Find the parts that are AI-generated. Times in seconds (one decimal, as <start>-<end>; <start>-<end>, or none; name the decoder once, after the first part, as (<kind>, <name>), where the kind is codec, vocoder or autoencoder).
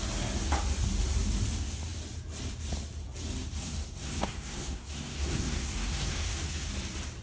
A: 3.6-6.7 (codec, SNAC)